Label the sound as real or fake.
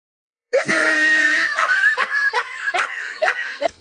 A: fake